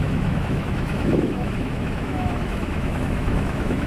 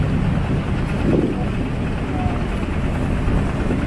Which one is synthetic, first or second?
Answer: first